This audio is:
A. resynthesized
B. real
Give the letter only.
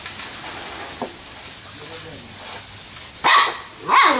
B